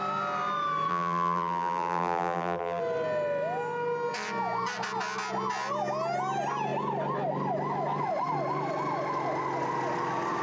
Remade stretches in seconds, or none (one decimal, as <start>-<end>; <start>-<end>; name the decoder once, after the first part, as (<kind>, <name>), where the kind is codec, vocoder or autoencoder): 0.9-2.8 (vocoder, BigVGAN v2)